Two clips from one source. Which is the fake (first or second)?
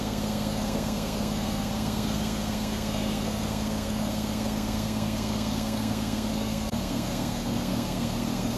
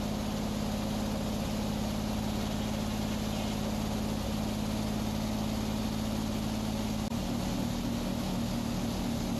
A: first